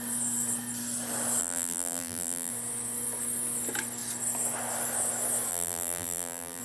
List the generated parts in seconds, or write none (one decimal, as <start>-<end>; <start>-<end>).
1.4-2.5; 5.5-6.6